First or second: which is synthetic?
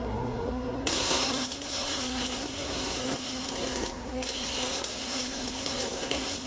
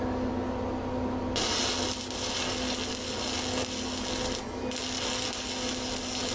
first